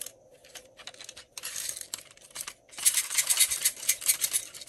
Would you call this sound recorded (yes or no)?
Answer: yes